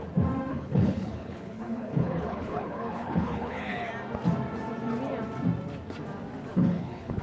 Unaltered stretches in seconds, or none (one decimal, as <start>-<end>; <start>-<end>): 0.0-0.5; 3.9-6.5